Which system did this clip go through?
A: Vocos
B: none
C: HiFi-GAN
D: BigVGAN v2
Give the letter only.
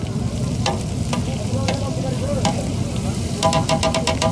D